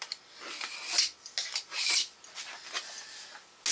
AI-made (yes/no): no